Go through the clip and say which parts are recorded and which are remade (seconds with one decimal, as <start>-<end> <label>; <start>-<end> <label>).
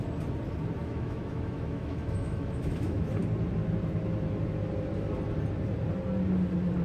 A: 0.0-0.8 recorded; 0.8-3.2 remade; 3.2-6.8 recorded